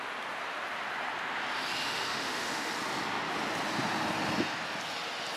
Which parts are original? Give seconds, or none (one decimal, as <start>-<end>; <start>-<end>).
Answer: 0.0-1.8; 2.7-5.4